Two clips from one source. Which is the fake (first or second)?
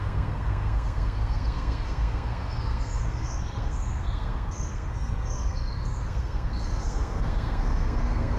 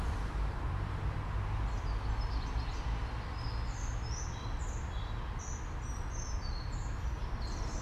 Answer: first